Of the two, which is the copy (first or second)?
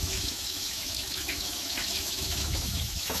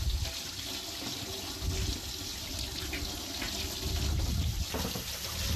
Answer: first